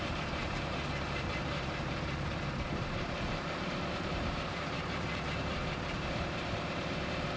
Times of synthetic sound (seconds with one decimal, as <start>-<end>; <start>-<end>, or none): 0.0-7.4